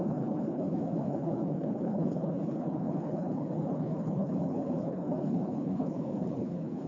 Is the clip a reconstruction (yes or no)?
yes